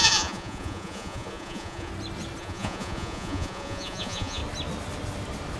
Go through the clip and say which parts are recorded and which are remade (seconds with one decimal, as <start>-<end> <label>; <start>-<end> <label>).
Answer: 0.0-1.9 remade; 1.9-2.4 recorded; 2.4-4.4 remade; 4.4-5.6 recorded

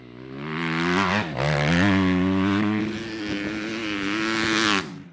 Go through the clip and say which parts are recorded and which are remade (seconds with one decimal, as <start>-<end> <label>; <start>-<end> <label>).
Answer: 0.0-5.1 recorded